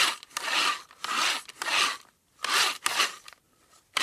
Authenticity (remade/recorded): recorded